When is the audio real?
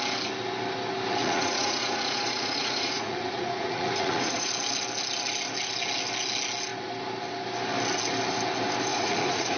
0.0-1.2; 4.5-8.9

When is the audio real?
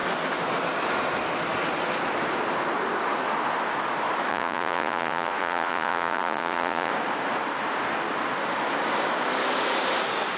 0.0-4.3; 6.9-10.4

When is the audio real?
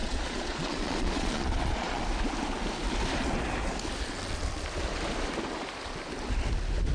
2.0-6.9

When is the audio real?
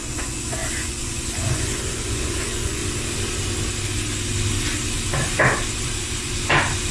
2.8-6.9